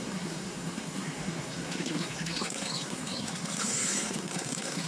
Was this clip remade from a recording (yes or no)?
yes